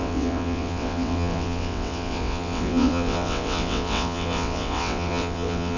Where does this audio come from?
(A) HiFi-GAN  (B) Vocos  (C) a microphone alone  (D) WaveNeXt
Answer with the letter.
D